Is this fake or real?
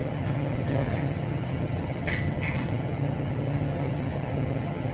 fake